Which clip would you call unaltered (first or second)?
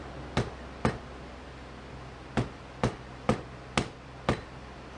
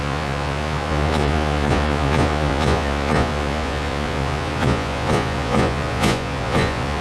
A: first